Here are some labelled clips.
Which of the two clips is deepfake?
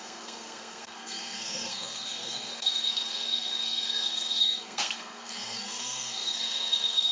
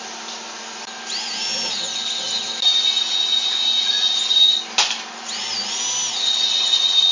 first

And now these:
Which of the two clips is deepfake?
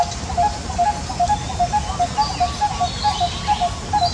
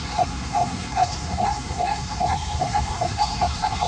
second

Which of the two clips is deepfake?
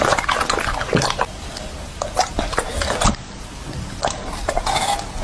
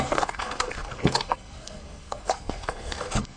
second